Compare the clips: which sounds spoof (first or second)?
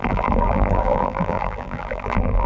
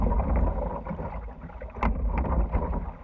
first